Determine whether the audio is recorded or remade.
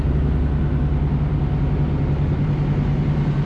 recorded